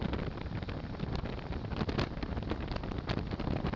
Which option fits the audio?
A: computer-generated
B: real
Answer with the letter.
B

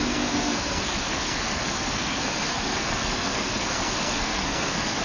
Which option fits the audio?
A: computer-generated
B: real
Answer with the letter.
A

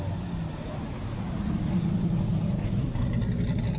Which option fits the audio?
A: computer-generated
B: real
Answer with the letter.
B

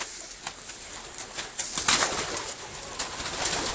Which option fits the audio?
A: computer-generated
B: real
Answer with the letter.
B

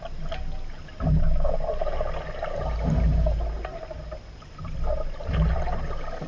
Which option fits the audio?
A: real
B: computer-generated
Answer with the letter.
A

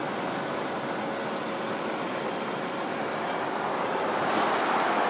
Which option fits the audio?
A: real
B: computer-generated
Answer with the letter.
A